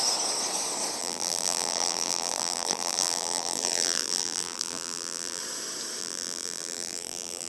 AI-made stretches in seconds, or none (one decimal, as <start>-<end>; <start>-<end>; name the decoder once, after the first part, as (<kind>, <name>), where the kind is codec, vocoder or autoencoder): 1.0-5.4 (vocoder, BigVGAN v2); 6.0-7.5